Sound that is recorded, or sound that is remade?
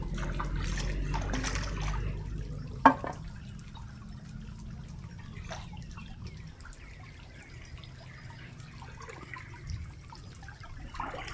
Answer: recorded